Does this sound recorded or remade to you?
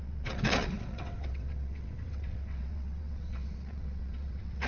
remade